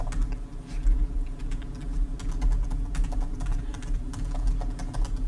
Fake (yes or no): no